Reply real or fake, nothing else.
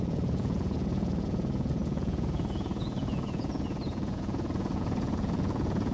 fake